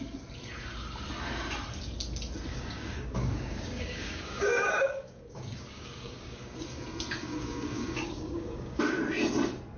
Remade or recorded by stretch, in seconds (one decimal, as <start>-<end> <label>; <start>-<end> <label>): 0.0-2.5 recorded; 2.5-6.8 remade; 6.8-7.2 recorded; 7.2-8.8 remade; 8.8-9.8 recorded